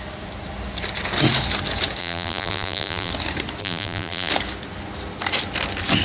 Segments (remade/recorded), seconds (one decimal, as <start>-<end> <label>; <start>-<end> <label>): 0.0-2.0 recorded; 2.0-3.1 remade; 3.1-3.6 recorded; 3.6-4.3 remade; 4.3-6.0 recorded